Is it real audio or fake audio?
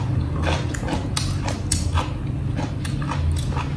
real